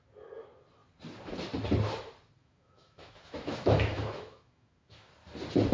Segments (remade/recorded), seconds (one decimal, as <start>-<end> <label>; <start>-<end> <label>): 0.0-2.4 recorded; 2.4-5.1 remade; 5.1-5.7 recorded